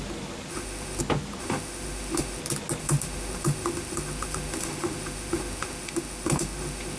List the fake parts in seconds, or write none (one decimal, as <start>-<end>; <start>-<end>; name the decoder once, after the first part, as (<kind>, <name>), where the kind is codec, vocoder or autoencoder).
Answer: 0.5-1.0 (autoencoder, DAC-VAE); 1.4-2.4; 2.8-7.0